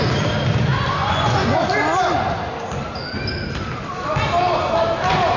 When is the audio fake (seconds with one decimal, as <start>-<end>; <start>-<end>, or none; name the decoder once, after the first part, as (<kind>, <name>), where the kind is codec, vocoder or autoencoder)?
1.0-1.6 (vocoder, Vocos)